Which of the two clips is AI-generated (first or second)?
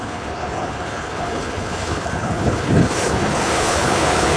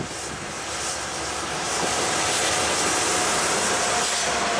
first